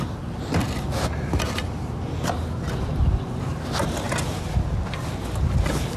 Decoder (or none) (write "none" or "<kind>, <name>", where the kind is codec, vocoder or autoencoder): none